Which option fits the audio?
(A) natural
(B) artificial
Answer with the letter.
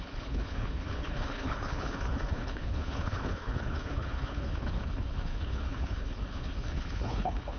B